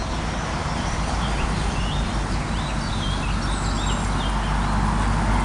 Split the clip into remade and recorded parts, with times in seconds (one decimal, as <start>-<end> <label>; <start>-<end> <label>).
0.0-5.4 recorded

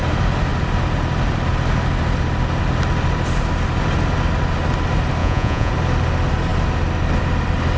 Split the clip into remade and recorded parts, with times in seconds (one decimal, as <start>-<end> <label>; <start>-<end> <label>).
0.0-5.2 recorded; 5.2-5.7 remade; 5.7-7.8 recorded